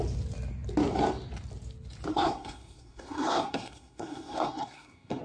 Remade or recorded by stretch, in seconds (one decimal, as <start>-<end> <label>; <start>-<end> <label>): 0.0-2.1 recorded; 2.1-5.2 remade